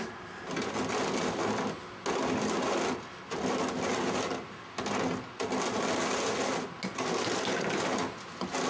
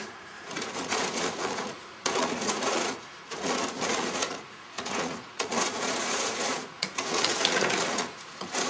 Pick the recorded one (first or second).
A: first